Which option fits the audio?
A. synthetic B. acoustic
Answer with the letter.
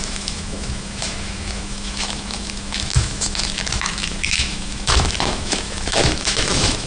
A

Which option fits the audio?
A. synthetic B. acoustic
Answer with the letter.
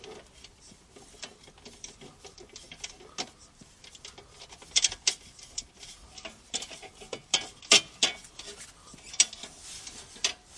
B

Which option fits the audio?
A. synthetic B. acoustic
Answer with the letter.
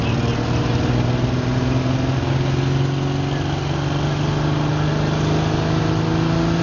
B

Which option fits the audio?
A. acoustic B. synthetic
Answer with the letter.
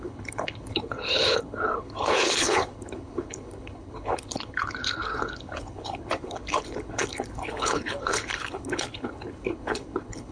B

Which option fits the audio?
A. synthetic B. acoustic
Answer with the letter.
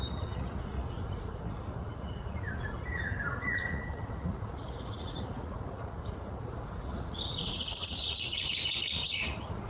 A